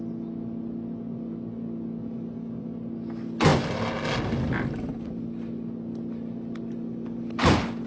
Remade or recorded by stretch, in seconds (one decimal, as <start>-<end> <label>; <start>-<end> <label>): 0.0-7.9 recorded